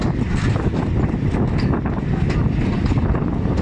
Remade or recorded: recorded